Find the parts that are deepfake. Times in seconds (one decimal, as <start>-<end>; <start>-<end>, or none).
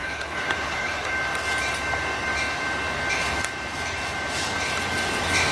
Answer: 0.0-1.1